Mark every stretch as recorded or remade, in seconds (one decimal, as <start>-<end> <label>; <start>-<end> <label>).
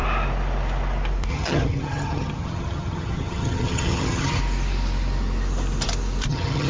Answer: 0.0-1.3 recorded; 1.3-4.4 remade; 4.4-6.3 recorded; 6.3-6.7 remade